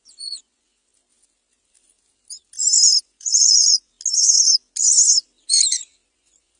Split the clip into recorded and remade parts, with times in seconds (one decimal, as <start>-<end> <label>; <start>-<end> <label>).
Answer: 0.0-0.8 remade; 0.8-3.0 recorded; 3.0-3.9 remade; 3.9-6.1 recorded; 6.1-6.6 remade